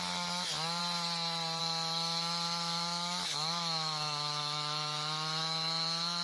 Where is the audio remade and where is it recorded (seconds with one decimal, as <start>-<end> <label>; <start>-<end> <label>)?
0.0-0.8 remade; 0.8-1.6 recorded; 1.6-6.2 remade